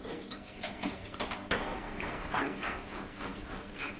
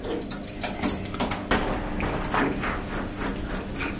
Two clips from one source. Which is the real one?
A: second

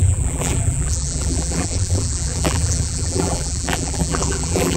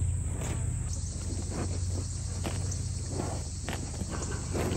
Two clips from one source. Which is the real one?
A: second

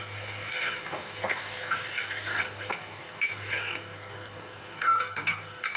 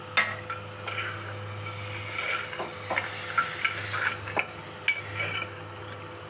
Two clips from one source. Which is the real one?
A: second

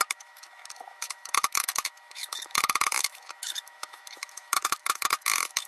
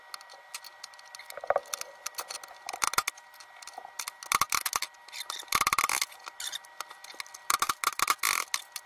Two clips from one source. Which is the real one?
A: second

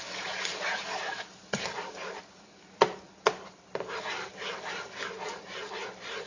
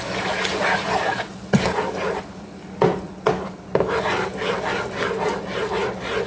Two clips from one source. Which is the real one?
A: second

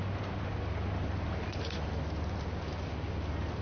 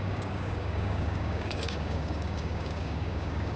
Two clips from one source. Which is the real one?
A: first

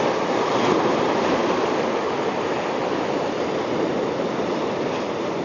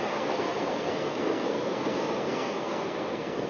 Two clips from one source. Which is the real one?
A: first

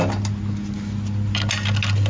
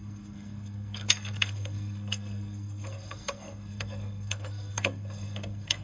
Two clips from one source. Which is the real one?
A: first